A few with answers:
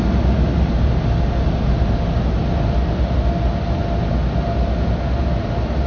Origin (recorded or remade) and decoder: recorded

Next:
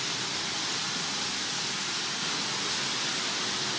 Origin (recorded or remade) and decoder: recorded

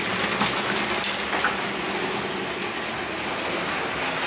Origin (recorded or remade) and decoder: recorded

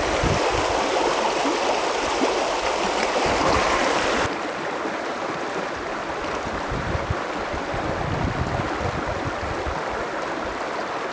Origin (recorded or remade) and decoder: recorded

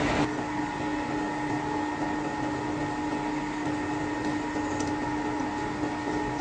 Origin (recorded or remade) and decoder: recorded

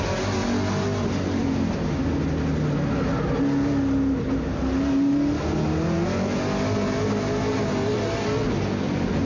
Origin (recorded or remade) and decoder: recorded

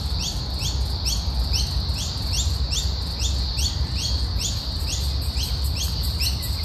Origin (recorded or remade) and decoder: recorded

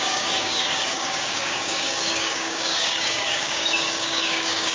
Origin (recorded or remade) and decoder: remade, codec, DAC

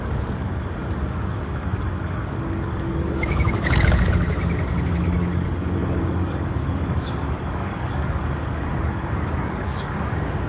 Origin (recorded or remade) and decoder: remade, codec, DAC